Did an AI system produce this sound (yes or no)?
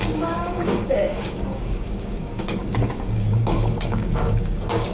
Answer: yes